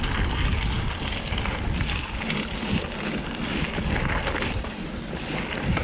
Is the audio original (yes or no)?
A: yes